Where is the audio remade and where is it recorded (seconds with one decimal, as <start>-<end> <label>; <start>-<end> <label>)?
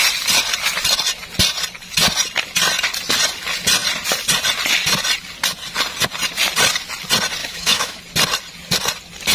0.0-7.4 recorded; 7.4-8.0 remade; 8.0-9.3 recorded